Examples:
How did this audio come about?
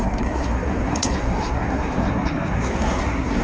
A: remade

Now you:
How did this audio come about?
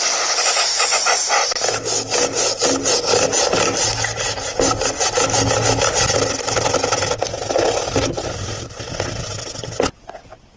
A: recorded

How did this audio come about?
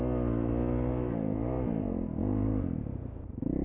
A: recorded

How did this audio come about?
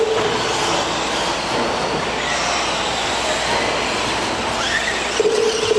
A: recorded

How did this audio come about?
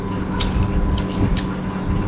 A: recorded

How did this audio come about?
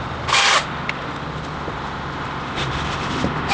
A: recorded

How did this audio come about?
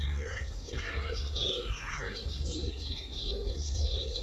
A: remade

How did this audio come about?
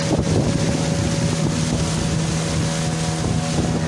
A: recorded